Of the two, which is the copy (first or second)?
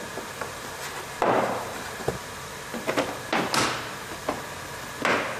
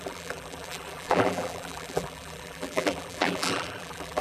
second